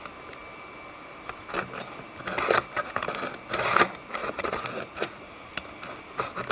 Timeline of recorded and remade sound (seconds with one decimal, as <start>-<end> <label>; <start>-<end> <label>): 0.0-4.2 recorded; 4.2-5.5 remade; 5.5-6.5 recorded